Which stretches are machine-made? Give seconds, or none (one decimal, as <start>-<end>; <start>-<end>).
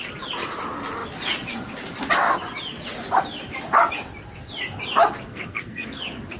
5.3-6.0